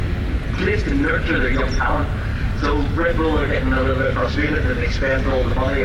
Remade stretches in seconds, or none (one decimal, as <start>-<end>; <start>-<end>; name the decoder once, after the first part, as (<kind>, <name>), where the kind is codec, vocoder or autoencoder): 2.3-5.8 (codec, DAC)